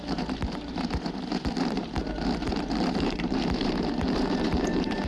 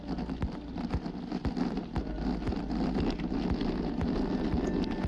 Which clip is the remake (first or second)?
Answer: first